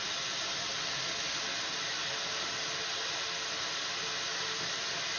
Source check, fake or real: real